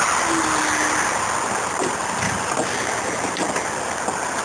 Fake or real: real